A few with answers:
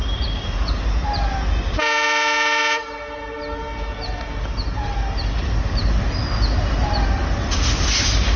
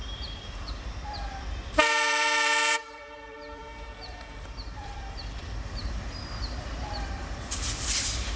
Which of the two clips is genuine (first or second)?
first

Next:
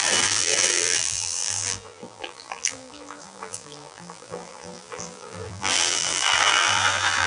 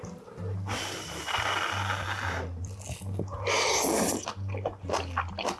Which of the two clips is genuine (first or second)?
second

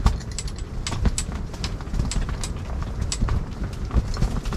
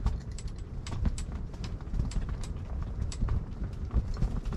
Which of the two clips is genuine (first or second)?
first